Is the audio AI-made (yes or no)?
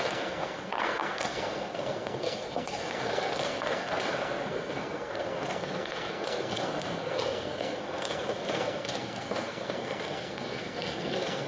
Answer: yes